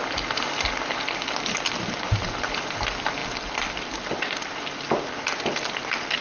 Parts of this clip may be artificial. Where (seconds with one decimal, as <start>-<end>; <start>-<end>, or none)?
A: none